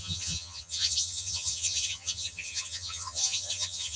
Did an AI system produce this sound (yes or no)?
yes